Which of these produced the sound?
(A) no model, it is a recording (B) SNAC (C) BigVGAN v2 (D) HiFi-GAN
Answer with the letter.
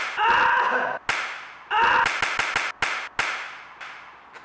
A